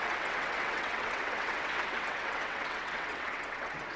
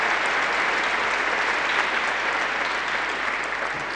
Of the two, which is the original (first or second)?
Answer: second